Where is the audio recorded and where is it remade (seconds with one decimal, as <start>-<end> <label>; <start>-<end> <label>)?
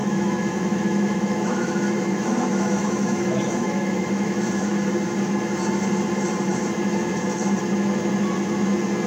0.0-4.9 remade; 4.9-9.1 recorded